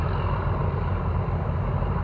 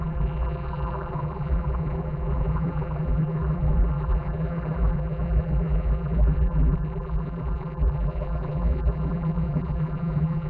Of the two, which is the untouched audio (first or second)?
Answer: first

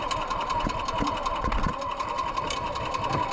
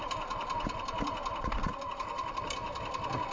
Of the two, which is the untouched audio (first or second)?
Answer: second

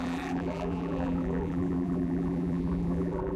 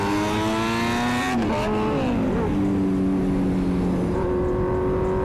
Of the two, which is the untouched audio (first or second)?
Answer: second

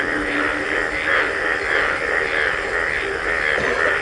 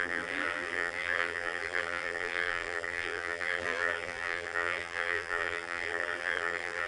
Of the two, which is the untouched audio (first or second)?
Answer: first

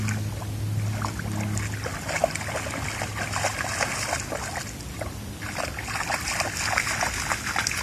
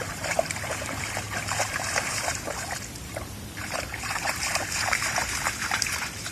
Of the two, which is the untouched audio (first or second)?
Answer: first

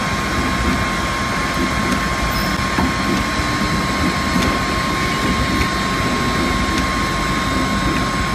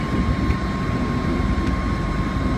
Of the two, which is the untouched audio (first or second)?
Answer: first